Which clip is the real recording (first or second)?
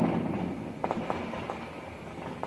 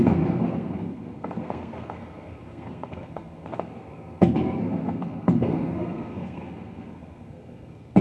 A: first